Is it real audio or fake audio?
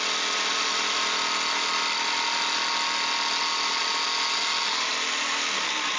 real